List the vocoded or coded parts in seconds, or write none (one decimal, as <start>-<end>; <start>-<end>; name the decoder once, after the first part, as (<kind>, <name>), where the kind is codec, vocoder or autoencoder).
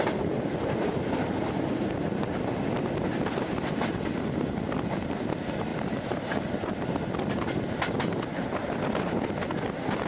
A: 5.7-6.7 (vocoder, BigVGAN v2)